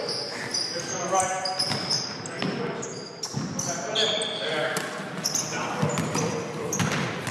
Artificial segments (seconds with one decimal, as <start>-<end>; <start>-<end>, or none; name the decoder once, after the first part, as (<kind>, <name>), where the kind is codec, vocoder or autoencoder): none